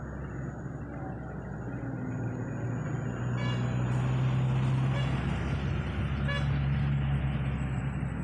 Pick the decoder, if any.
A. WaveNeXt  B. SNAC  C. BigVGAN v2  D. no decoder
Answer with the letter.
D